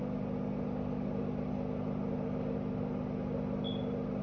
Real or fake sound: real